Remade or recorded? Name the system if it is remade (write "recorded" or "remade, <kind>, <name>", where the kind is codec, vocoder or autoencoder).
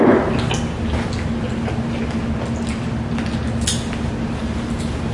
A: recorded